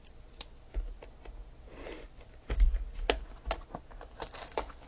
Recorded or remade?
recorded